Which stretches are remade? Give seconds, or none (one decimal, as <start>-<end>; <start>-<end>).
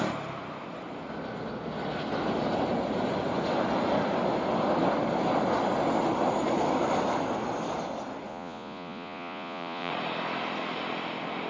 8.3-9.9